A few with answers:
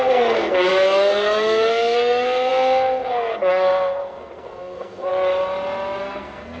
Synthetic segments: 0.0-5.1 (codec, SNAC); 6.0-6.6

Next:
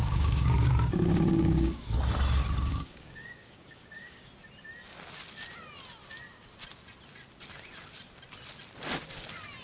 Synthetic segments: 0.0-2.0 (codec, DAC); 2.7-4.3

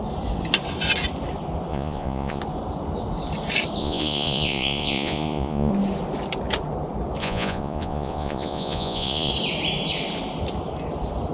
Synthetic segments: 1.7-2.4 (vocoder, Vocos); 3.8-5.7; 7.2-9.3

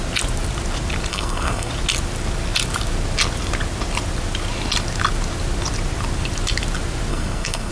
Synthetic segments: 1.1-1.7 (codec, SNAC); 7.1-7.7

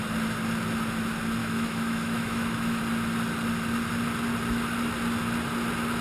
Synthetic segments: 1.4-2.8 (autoencoder, DAC-VAE)

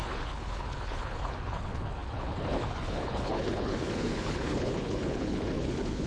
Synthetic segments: 0.0-6.1 (codec, HILCodec)